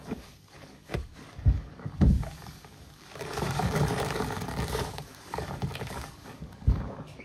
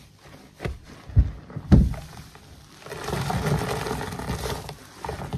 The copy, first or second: first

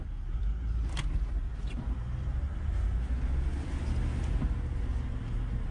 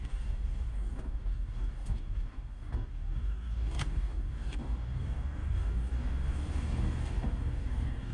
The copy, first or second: second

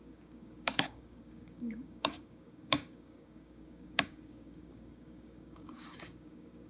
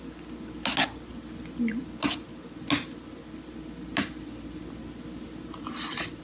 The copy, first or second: first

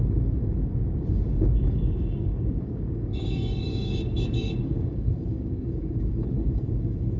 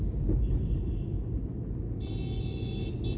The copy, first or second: first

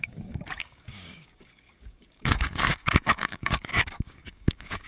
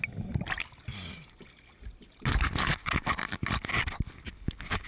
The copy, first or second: first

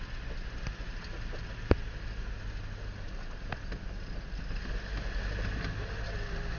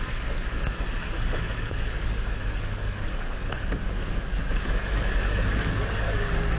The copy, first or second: second